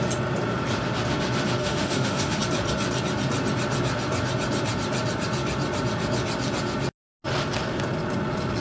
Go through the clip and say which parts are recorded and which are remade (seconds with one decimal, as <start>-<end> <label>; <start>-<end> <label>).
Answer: 0.0-1.6 recorded; 1.6-2.4 remade; 2.4-8.6 recorded